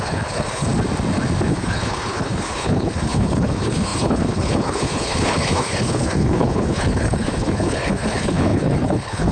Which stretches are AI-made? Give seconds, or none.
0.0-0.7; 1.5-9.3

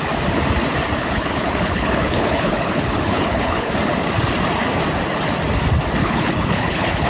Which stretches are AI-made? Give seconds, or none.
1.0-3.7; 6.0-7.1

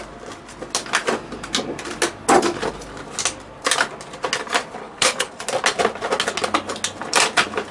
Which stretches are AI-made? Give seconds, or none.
4.8-5.3

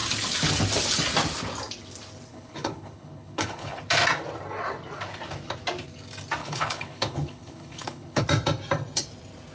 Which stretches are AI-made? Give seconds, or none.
2.3-3.8; 6.4-8.2

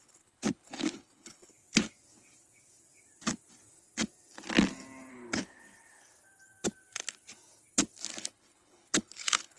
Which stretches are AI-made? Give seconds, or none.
0.0-1.5; 5.1-5.6; 8.2-9.6

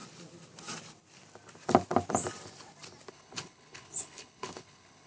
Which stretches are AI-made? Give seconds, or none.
3.1-5.1

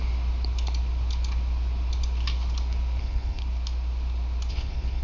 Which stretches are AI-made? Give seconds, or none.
3.0-3.4; 4.5-5.0